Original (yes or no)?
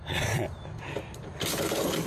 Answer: yes